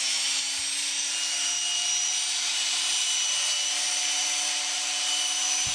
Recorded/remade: remade